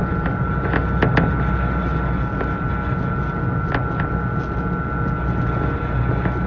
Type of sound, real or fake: real